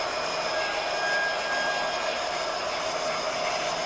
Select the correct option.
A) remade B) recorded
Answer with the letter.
B